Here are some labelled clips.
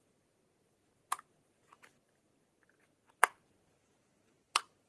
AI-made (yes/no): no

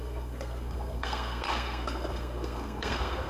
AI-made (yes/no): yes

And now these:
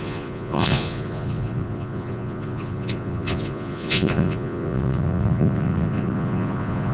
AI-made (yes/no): yes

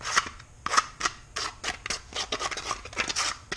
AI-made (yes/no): no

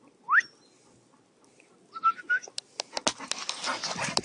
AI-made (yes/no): no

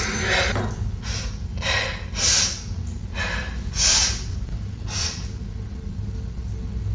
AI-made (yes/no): no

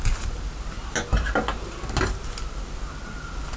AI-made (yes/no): no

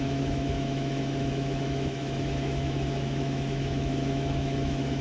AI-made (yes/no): yes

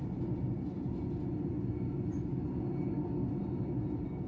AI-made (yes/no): no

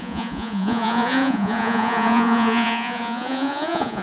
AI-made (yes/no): yes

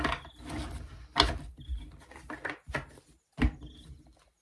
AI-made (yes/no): no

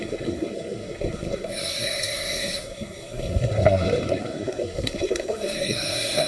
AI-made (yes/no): yes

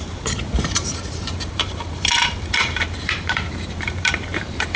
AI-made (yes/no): yes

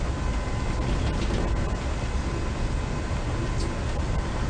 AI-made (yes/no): no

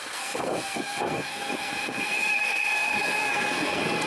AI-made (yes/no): yes